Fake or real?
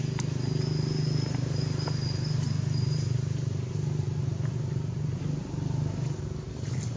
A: real